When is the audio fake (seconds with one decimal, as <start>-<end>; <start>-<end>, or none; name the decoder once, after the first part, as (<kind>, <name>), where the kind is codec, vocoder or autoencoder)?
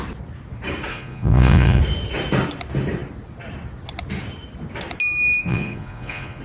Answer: 0.9-1.8 (vocoder, Vocos); 5.4-6.4